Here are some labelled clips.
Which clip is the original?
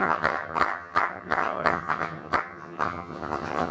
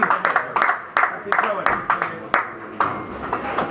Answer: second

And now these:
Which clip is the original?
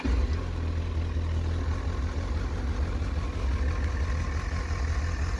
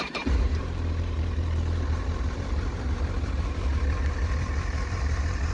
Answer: first